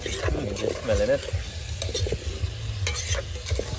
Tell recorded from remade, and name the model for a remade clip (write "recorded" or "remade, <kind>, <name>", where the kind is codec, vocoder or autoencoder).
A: recorded